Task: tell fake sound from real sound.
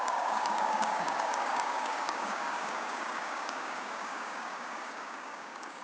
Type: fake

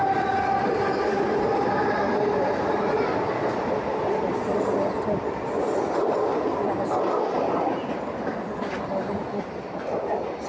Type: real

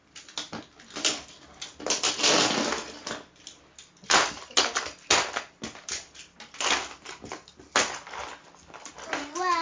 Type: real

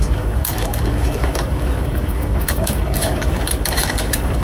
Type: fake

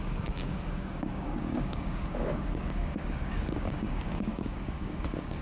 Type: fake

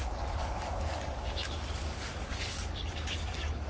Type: fake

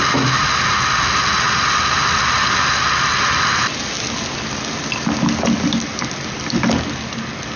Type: real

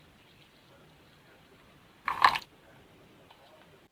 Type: real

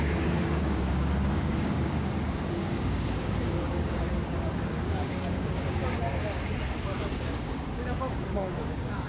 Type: fake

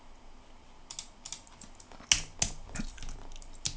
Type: real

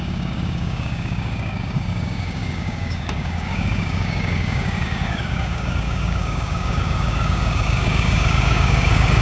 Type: fake